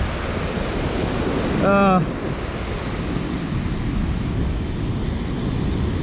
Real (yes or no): yes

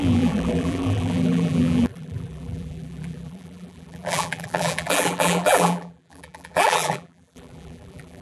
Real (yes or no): no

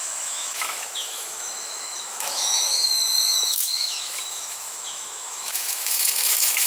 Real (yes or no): no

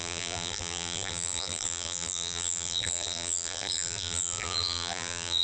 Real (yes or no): no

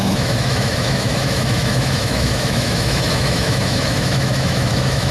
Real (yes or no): no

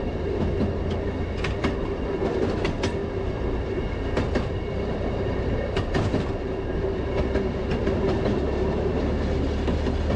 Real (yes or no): yes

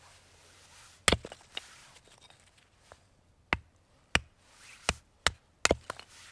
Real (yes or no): yes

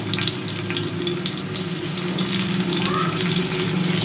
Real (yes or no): yes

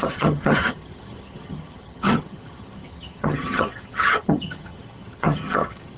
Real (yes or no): no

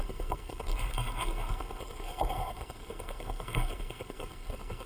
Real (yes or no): no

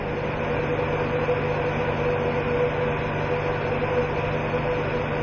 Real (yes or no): yes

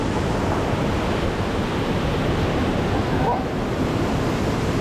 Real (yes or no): yes